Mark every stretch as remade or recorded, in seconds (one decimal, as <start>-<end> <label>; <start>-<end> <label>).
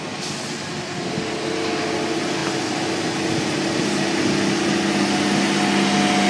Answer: 0.0-6.3 recorded